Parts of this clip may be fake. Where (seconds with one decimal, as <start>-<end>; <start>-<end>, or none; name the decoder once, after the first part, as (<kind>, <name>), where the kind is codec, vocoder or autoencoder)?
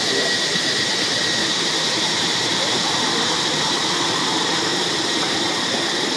none